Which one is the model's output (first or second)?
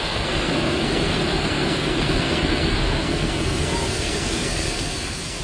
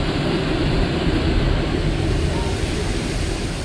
first